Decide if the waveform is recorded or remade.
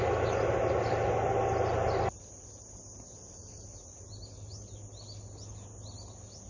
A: recorded